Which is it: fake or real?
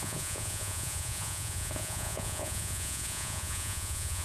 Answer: fake